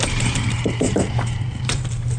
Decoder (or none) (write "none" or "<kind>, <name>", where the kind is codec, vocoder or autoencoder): vocoder, BigVGAN v2